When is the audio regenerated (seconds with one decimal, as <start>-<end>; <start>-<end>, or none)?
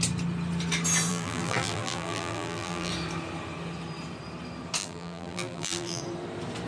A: 1.1-2.9; 4.8-6.0